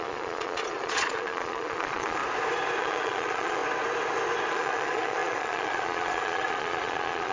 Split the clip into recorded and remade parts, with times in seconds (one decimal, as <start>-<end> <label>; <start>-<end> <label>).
0.0-2.2 remade; 2.2-2.8 recorded; 2.8-3.6 remade; 3.6-4.5 recorded; 4.5-7.3 remade